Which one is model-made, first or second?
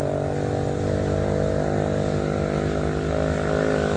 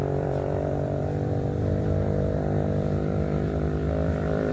second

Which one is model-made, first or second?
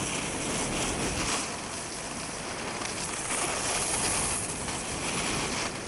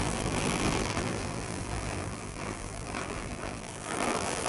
second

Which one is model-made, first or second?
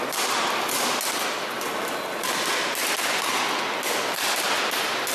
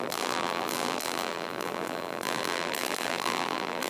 second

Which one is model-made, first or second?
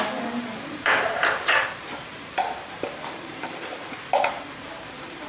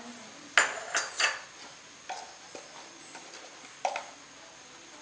first